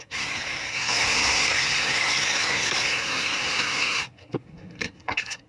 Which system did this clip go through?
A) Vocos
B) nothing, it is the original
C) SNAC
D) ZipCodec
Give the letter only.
C